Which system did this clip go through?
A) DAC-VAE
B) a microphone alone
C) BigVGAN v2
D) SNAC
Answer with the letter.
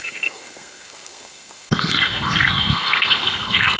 D